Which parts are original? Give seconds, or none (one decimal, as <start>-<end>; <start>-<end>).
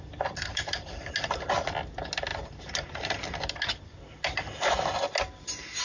0.0-0.5; 1.1-2.3; 3.2-5.8